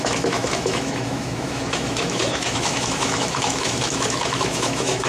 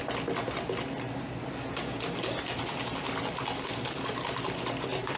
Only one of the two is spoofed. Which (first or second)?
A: first